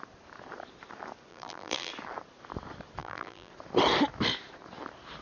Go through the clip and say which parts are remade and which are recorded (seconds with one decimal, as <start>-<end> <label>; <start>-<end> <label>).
0.0-1.3 recorded; 1.3-1.9 remade; 1.9-3.0 recorded; 3.0-3.5 remade; 3.5-5.2 recorded

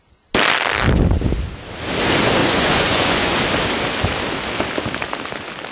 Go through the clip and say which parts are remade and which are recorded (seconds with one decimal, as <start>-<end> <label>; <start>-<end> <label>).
0.0-2.4 recorded; 2.4-3.4 remade; 3.4-5.7 recorded

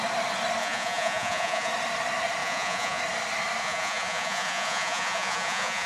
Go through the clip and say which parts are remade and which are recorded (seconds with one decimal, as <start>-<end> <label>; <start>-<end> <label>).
0.0-0.6 recorded; 0.6-1.7 remade; 1.7-2.4 recorded; 2.4-3.0 remade; 3.0-3.6 recorded; 3.6-5.9 remade

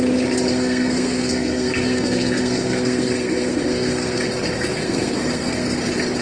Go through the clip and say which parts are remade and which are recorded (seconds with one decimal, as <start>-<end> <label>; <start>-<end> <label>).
0.0-0.5 recorded; 0.5-4.2 remade; 4.2-4.7 recorded; 4.7-5.8 remade; 5.8-6.2 recorded